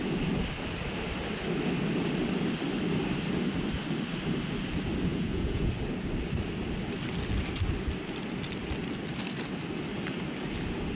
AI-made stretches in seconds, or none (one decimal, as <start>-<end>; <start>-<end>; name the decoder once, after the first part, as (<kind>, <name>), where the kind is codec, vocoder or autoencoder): 5.1-5.7 (vocoder, Vocos)